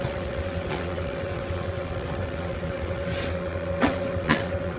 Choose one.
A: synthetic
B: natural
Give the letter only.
A